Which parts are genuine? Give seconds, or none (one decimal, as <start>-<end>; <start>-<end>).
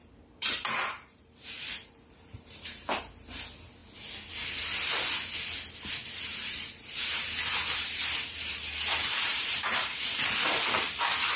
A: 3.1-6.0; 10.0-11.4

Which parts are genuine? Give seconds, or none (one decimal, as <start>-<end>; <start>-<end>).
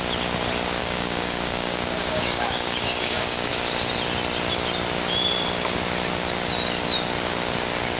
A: 0.0-0.8; 3.5-8.0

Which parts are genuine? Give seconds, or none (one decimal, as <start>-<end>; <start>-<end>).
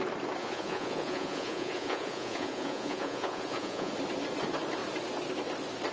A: 0.0-0.4; 3.9-5.9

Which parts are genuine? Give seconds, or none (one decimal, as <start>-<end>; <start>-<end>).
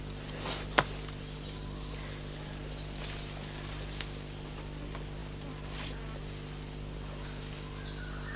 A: 0.0-8.4